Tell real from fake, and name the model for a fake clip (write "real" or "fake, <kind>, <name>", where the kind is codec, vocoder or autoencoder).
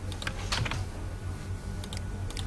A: real